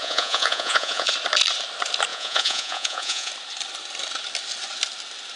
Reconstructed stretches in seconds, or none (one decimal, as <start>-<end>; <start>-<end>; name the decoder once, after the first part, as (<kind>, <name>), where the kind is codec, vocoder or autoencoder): 0.0-1.1 (vocoder, Vocos); 2.1-3.3